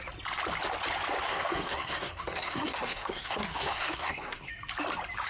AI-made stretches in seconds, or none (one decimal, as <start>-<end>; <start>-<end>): 1.3-4.5